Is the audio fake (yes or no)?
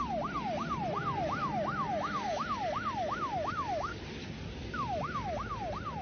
no